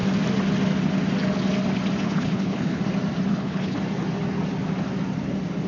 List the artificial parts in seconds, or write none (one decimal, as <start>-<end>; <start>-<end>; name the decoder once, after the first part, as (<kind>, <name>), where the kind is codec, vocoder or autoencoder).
2.0-2.8 (codec, HILCodec); 3.3-3.8